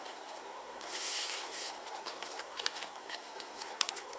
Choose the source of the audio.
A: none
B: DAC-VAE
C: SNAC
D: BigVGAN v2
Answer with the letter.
C